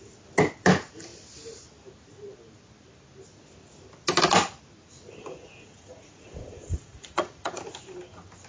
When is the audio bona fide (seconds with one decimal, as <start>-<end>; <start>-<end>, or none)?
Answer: 0.0-5.2; 7.6-8.5